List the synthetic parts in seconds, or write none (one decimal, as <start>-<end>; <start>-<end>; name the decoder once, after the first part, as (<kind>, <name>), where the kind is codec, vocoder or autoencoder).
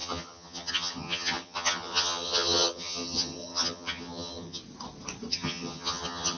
0.0-4.6 (vocoder, HiFi-GAN); 5.3-6.4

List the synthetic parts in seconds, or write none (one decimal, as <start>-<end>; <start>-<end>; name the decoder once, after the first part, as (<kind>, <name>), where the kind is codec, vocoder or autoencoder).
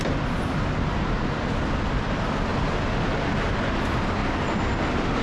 none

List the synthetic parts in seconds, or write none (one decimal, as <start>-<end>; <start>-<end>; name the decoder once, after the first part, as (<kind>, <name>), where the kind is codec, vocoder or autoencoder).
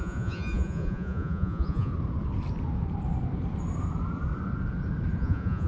0.0-1.9 (vocoder, Vocos); 5.2-5.7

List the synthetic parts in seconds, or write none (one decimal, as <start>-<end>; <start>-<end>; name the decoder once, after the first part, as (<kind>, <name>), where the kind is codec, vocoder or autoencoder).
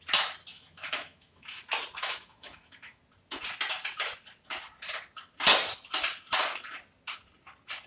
0.5-1.6 (autoencoder, DAC-VAE); 2.0-3.0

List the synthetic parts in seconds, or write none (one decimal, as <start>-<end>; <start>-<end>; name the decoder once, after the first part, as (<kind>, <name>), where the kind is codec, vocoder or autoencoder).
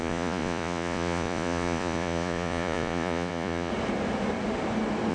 0.0-3.7 (vocoder, Vocos)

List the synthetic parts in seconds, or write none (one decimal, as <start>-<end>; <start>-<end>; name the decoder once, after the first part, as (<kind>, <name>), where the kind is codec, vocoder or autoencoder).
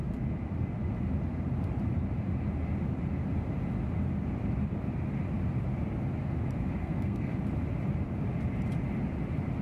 6.8-7.3 (codec, SNAC)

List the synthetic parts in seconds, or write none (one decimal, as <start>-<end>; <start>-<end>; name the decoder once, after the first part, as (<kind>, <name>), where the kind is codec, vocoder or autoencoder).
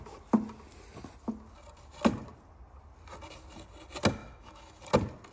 4.2-4.8 (autoencoder, DAC-VAE)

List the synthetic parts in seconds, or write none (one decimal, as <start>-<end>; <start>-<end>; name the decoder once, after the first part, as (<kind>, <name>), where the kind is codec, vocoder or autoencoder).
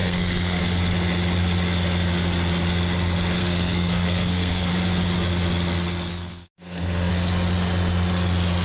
0.0-0.6 (codec, SNAC); 3.4-4.7; 6.1-7.1